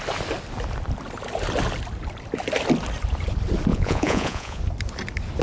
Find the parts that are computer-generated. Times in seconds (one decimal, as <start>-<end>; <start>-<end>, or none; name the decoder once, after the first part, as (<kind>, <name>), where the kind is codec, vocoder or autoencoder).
3.7-4.6 (vocoder, Vocos)